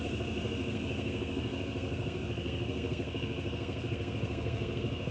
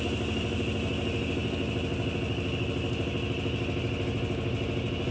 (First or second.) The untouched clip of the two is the second